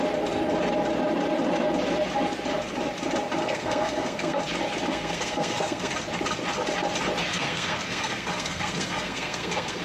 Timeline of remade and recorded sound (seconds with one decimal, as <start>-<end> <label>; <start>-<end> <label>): 0.0-3.4 recorded; 3.4-4.4 remade; 4.4-4.9 recorded; 4.9-5.9 remade; 5.9-7.3 recorded; 7.3-9.8 remade